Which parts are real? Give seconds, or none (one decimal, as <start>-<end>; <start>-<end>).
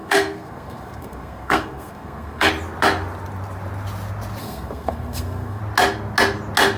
2.5-4.4; 5.6-6.8